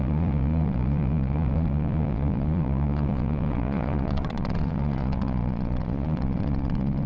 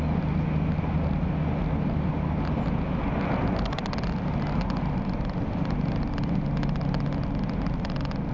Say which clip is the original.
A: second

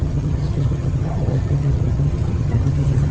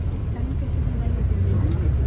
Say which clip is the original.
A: second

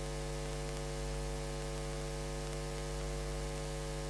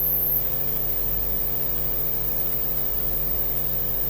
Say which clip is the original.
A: first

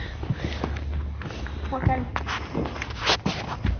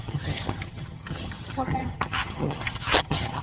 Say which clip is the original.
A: first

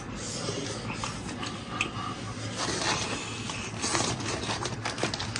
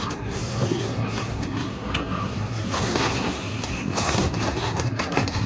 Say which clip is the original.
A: first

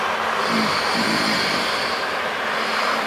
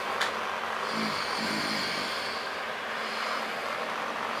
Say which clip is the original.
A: second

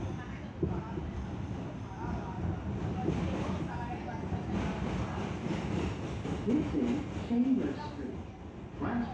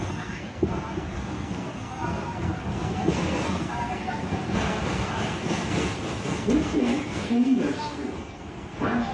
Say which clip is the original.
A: first